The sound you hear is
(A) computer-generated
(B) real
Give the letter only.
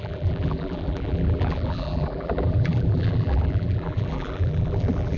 A